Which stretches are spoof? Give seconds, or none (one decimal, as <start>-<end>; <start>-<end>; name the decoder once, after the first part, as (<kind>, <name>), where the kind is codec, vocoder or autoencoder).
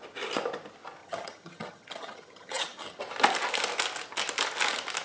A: 1.0-3.0 (vocoder, HiFi-GAN)